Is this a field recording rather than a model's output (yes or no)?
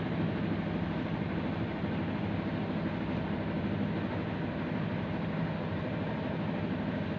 yes